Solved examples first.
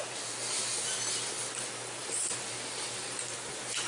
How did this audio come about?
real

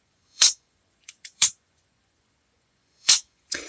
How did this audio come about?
fake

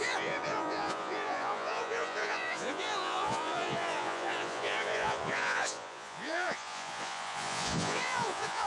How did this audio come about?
fake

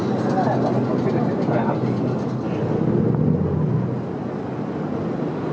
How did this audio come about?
real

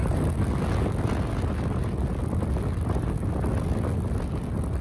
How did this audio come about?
real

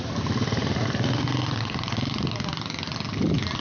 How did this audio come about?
real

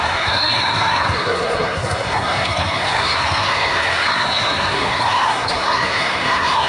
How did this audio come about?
fake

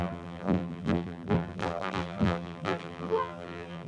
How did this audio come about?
fake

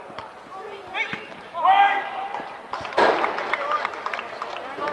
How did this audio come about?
real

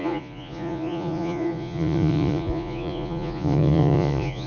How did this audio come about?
fake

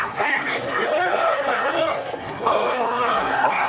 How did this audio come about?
fake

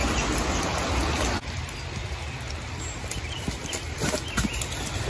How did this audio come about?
real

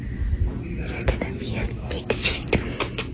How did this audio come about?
real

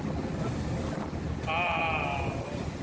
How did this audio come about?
real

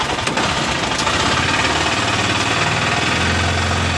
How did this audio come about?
real